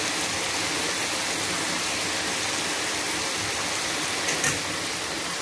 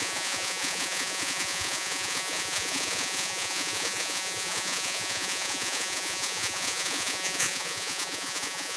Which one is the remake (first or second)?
second